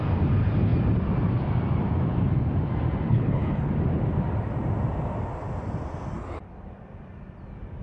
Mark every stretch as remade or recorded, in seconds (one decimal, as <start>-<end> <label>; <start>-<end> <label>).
0.0-3.1 recorded; 3.1-3.7 remade; 3.7-7.8 recorded